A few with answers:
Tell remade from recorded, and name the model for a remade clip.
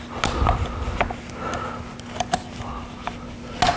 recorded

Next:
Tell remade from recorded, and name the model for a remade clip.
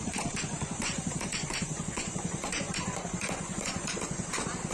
remade, vocoder, Vocos